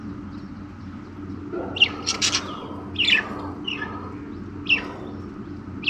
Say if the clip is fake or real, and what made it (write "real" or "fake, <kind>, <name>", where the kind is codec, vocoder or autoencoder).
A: real